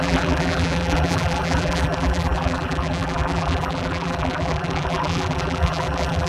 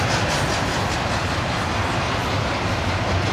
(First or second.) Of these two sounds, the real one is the second